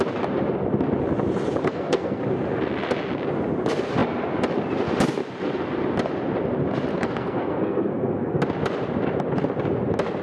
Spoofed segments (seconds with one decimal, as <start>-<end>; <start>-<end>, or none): 1.6-2.2; 6.9-8.4